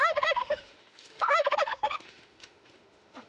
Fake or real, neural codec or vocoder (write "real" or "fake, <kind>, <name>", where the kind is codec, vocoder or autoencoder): fake, autoencoder, DAC-VAE